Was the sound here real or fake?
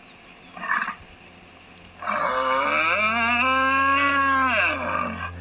real